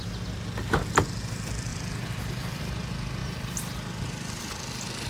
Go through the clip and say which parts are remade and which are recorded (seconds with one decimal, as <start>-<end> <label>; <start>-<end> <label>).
0.0-1.7 recorded; 1.7-2.6 remade; 2.6-5.1 recorded